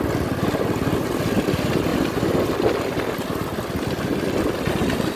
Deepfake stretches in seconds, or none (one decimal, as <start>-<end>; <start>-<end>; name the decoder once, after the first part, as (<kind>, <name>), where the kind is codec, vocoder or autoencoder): none